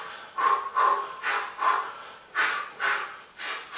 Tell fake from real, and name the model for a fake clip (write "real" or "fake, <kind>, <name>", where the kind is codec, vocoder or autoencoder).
real